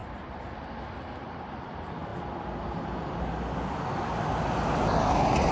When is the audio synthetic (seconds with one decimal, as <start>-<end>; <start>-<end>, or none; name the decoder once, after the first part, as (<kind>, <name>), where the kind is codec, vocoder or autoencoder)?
0.0-1.7 (vocoder, BigVGAN v2); 2.1-3.2